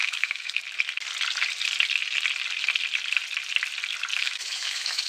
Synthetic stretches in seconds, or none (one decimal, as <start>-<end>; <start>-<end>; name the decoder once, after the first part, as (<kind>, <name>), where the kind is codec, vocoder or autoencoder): 0.0-0.6 (autoencoder, DAC-VAE); 4.1-5.1